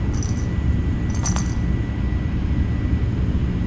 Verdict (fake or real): real